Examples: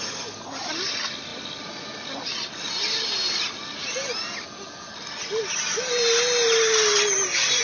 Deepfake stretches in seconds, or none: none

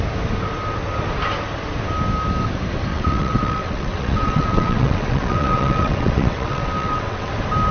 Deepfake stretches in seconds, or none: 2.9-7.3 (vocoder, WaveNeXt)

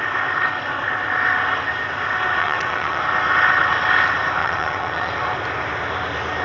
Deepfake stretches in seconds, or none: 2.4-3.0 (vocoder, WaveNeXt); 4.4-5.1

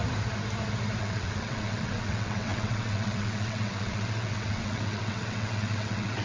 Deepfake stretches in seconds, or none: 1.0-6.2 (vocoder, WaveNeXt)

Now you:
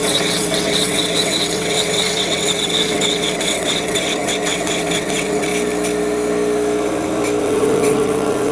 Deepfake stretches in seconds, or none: 0.0-5.5 (vocoder, WaveNeXt); 7.4-8.5